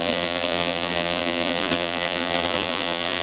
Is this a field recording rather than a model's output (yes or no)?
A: no